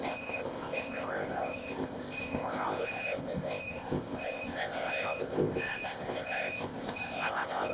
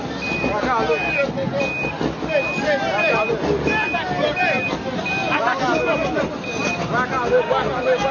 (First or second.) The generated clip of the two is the first